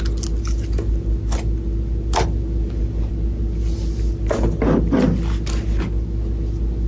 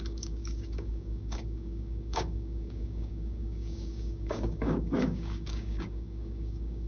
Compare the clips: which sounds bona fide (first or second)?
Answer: first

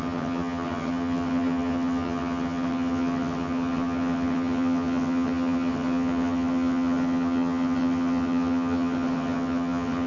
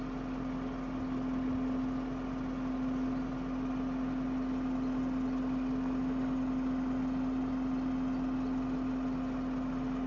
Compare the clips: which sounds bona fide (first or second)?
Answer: second